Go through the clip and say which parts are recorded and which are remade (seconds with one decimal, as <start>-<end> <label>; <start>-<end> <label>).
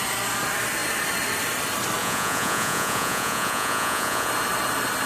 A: 0.0-2.0 recorded; 2.0-4.3 remade; 4.3-5.1 recorded